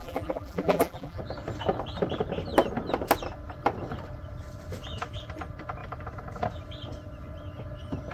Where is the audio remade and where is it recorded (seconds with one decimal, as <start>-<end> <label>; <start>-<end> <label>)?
0.0-1.2 remade; 1.2-8.1 recorded